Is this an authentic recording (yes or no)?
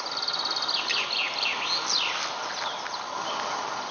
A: yes